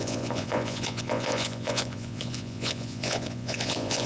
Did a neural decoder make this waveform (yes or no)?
yes